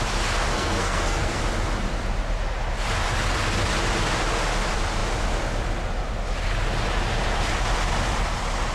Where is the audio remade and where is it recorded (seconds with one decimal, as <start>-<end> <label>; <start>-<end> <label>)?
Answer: 0.0-0.5 recorded; 0.5-1.4 remade; 1.4-8.7 recorded

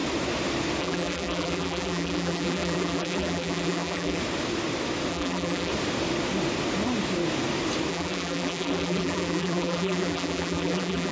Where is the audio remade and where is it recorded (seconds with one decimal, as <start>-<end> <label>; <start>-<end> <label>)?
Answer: 0.0-0.8 recorded; 0.8-4.2 remade; 4.2-5.1 recorded; 5.1-5.7 remade; 5.7-7.9 recorded; 7.9-11.1 remade